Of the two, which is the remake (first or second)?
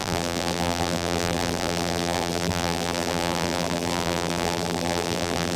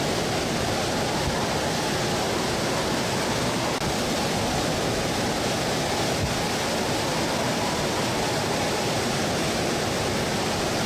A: first